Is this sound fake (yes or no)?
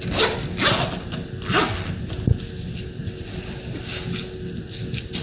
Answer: no